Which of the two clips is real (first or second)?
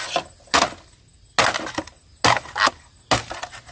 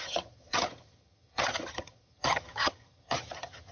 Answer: first